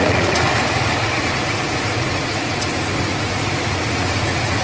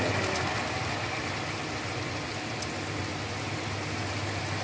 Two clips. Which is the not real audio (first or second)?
first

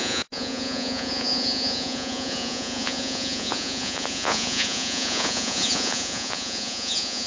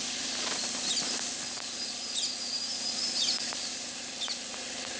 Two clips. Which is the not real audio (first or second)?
first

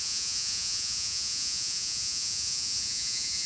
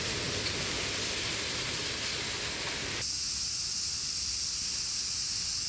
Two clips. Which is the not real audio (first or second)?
first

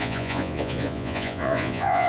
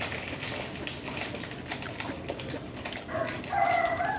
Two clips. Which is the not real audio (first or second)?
first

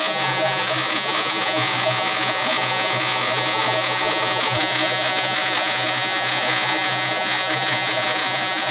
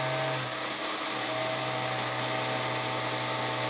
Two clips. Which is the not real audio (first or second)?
first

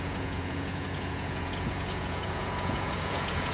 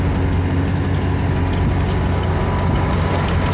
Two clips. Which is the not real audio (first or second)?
first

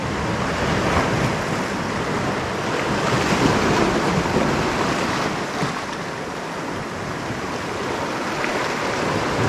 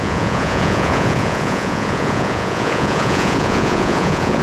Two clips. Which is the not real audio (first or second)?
second